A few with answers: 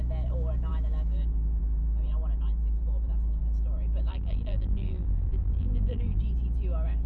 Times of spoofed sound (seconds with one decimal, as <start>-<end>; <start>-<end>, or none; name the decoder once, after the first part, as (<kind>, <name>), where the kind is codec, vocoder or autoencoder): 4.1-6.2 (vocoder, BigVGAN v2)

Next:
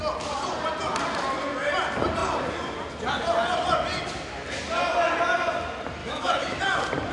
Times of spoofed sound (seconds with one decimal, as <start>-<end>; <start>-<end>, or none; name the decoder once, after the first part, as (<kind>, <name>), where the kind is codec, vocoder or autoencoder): 6.0-6.6 (autoencoder, DAC-VAE)

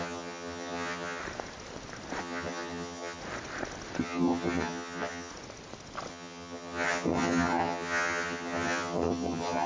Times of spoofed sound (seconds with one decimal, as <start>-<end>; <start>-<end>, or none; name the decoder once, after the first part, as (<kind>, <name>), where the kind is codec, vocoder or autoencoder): 0.0-1.2 (vocoder, HiFi-GAN); 2.2-3.2; 4.0-5.3; 6.1-9.7

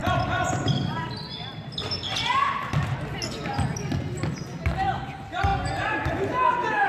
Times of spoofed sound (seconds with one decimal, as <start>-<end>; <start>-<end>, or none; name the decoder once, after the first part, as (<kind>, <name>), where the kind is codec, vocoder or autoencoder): none

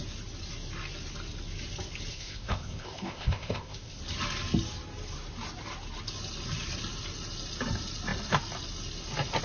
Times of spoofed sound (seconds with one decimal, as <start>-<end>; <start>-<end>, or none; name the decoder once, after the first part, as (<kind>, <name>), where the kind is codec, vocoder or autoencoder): 2.1-4.0 (codec, ZipCodec)

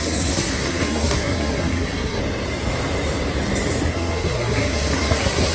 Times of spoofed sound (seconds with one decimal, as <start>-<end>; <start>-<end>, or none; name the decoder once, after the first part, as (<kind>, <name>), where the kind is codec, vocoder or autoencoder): 0.0-2.2 (codec, SNAC); 3.9-5.5

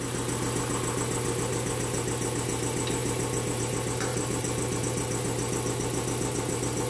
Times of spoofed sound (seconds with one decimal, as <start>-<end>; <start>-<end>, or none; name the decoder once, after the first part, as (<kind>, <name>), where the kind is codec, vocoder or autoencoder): 4.1-4.8 (vocoder, BigVGAN v2)

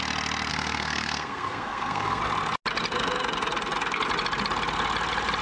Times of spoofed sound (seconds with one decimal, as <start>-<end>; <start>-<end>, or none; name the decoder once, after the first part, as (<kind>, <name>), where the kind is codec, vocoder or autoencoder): 0.5-2.2 (codec, SNAC)